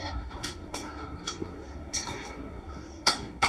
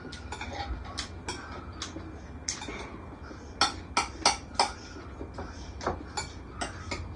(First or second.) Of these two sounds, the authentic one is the second